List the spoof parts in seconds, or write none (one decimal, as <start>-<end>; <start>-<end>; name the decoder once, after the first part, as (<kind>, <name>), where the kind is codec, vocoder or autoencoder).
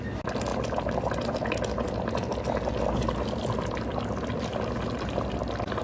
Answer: none